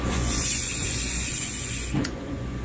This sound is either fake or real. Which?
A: fake